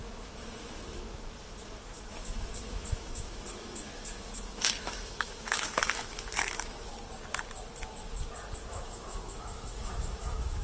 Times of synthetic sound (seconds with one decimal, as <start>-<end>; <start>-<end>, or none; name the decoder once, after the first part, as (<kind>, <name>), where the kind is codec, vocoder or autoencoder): 0.0-6.9 (autoencoder, DAC-VAE); 8.7-10.6